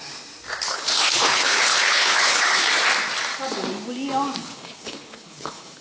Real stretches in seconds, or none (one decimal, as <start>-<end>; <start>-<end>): 0.0-0.7; 2.7-4.4